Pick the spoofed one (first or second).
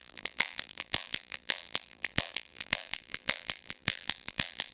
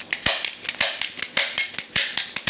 first